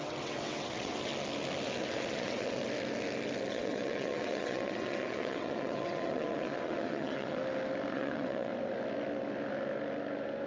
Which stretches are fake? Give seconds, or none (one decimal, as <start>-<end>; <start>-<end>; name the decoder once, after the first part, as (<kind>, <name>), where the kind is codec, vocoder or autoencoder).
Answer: 0.0-1.1 (vocoder, WaveNeXt); 1.8-2.6; 3.5-7.4; 7.9-8.5